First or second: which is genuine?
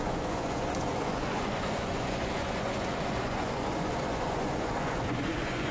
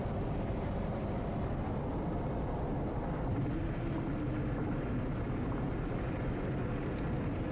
second